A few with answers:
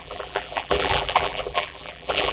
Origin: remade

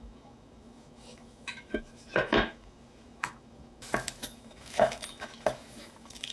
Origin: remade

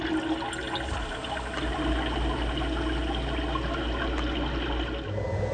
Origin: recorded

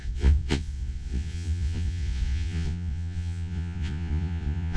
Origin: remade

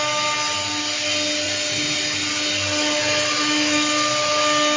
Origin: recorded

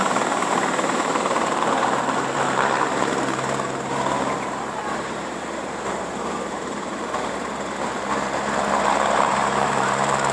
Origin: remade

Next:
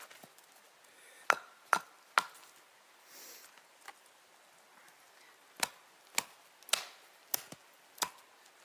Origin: recorded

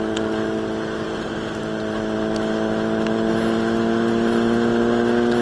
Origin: recorded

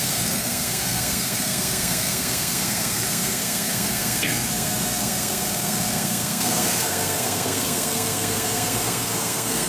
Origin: remade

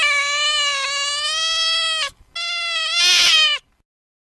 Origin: recorded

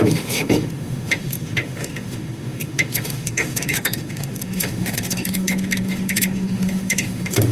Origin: remade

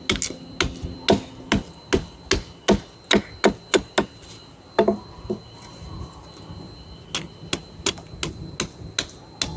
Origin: recorded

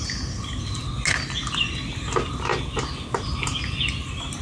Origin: recorded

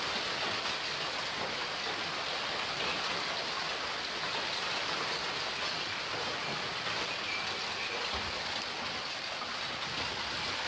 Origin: recorded